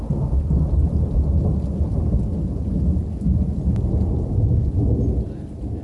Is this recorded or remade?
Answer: recorded